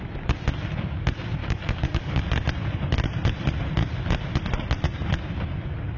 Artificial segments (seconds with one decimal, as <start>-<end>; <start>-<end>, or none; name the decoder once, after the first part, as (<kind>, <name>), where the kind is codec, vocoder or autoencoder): 1.4-2.2 (codec, DAC)